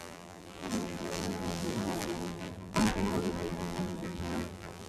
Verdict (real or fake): fake